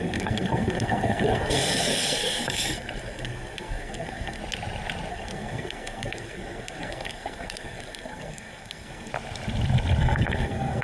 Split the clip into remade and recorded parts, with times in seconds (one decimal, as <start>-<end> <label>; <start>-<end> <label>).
0.0-4.4 remade; 4.4-5.1 recorded; 5.1-9.1 remade; 9.1-10.0 recorded; 10.0-10.8 remade